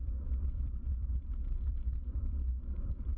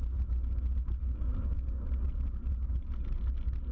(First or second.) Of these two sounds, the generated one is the first